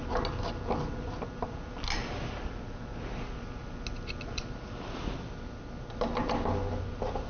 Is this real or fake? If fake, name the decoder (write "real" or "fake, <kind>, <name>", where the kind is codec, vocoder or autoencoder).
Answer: real